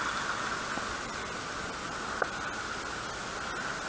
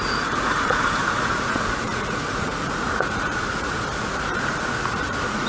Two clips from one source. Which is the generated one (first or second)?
second